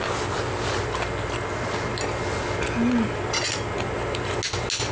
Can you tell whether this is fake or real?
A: real